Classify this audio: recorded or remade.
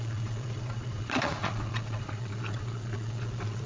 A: remade